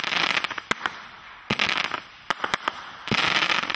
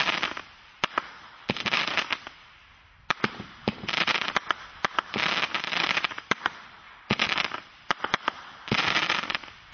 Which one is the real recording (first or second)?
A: first